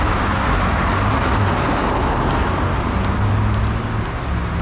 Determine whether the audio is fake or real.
real